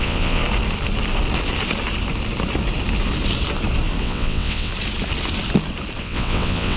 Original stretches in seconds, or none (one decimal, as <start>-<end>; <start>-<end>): 0.4-4.0; 4.7-6.0

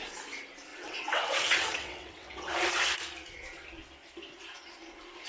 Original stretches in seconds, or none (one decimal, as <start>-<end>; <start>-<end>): 0.0-0.7; 2.5-5.3

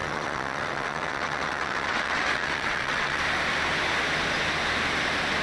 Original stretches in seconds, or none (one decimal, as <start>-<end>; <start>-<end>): 3.2-5.4

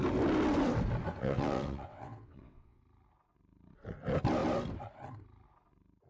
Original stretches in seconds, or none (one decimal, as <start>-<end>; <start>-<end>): 0.0-1.2; 2.8-6.1

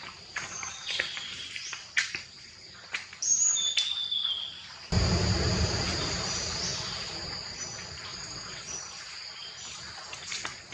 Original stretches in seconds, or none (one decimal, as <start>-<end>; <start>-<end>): 0.0-8.1; 8.7-10.7

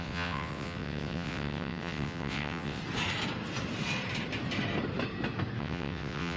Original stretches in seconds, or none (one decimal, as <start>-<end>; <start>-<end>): 2.8-5.6

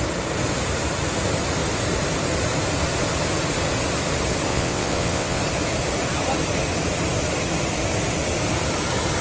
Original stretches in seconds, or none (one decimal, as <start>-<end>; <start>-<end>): 0.0-4.5; 5.4-9.2

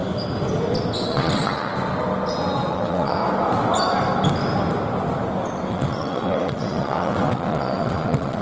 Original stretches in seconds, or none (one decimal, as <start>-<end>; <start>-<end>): 0.0-1.1; 1.7-2.7; 3.2-5.7